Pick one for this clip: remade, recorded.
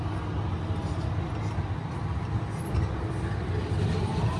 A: recorded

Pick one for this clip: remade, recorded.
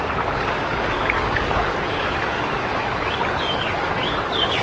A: remade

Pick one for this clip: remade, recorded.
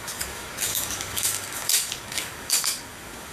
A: remade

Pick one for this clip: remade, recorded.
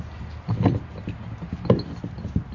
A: recorded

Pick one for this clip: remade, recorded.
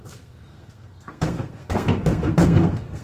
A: remade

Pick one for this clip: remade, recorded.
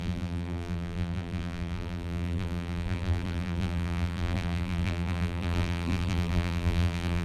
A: remade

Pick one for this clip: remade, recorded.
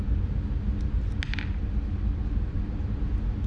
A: recorded